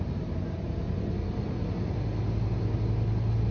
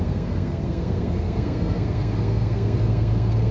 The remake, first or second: second